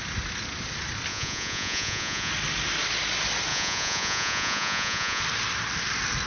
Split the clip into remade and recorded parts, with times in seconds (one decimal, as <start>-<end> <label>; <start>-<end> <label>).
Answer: 0.0-1.1 recorded; 1.1-2.3 remade; 2.3-3.5 recorded; 3.5-5.2 remade; 5.2-6.3 recorded